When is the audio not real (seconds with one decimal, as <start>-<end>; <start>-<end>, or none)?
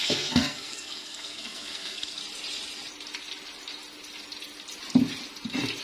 0.0-2.2